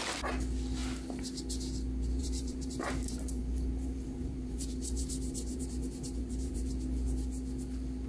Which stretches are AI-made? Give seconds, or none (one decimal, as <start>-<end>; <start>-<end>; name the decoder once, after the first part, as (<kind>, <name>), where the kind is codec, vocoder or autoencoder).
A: 2.2-6.7 (vocoder, BigVGAN v2)